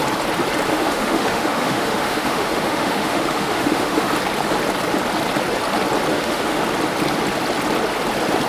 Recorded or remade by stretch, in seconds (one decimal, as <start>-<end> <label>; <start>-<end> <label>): 0.0-0.7 recorded; 0.7-4.1 remade; 4.1-6.1 recorded; 6.1-6.6 remade; 6.6-8.5 recorded